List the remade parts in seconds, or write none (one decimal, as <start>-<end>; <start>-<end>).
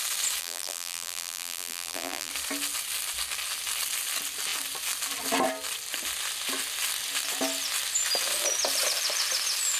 0.4-2.3